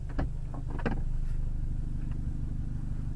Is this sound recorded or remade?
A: recorded